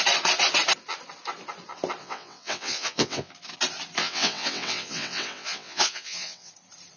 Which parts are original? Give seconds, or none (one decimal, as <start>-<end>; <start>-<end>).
0.0-2.0; 3.3-4.0; 6.5-7.0